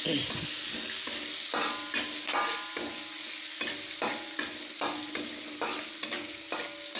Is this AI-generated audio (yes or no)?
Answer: no